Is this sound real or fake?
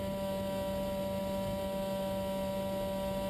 real